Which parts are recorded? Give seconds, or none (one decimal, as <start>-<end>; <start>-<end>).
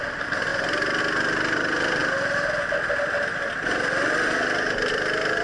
0.0-5.4